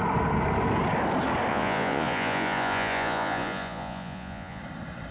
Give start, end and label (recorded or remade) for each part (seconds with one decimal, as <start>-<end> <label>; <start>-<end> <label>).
0.0-1.5 recorded; 1.5-4.6 remade; 4.6-5.1 recorded

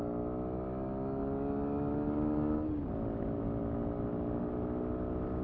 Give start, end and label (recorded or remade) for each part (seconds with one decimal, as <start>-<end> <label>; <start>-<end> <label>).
0.0-5.4 recorded

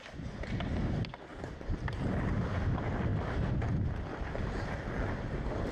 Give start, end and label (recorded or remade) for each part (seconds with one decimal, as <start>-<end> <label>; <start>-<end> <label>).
0.0-1.3 recorded; 1.3-2.4 remade; 2.4-5.7 recorded

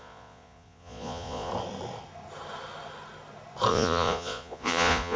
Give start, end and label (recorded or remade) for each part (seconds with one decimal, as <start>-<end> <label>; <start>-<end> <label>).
0.0-1.5 remade; 1.5-3.7 recorded; 3.7-5.2 remade

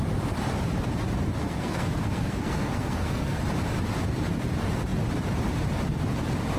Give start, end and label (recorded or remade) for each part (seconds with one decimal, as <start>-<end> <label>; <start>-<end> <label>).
0.0-1.4 recorded; 1.4-3.4 remade; 3.4-6.6 recorded

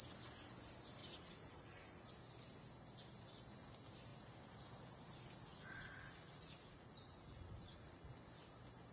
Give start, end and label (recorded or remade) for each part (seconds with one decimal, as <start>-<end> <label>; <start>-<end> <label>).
0.0-1.0 recorded; 1.0-2.1 remade; 2.1-5.5 recorded; 5.5-8.1 remade; 8.1-8.9 recorded

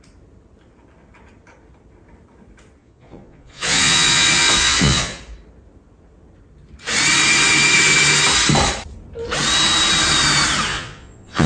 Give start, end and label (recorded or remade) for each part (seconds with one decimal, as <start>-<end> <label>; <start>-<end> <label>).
0.0-2.8 recorded; 2.8-5.2 remade; 5.2-10.7 recorded; 10.7-11.5 remade